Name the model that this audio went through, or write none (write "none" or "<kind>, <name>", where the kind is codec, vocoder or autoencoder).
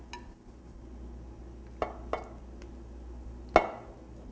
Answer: none